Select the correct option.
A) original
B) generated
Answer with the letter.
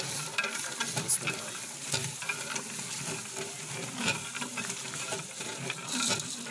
A